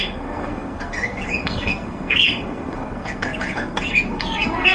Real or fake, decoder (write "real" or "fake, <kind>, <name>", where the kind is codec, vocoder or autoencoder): fake, codec, SNAC